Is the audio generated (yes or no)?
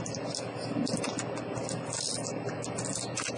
no